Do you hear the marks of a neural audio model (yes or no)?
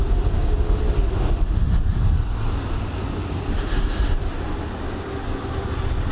no